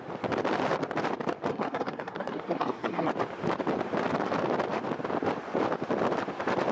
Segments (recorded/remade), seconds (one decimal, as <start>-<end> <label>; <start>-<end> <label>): 0.0-1.5 recorded; 1.5-3.1 remade; 3.1-6.7 recorded